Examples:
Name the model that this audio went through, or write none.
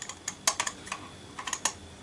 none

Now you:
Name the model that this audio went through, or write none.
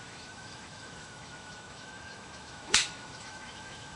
autoencoder, DAC-VAE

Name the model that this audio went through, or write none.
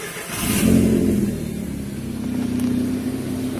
none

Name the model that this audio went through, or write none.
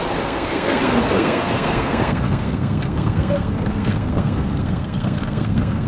codec, SNAC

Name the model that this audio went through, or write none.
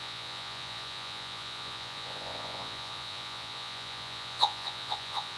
vocoder, Vocos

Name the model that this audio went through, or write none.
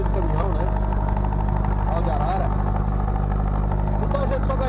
none